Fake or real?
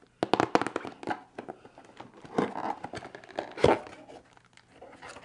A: real